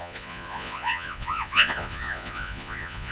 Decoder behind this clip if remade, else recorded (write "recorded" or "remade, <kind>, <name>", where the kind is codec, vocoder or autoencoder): remade, vocoder, Vocos